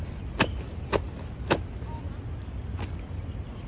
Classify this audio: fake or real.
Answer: real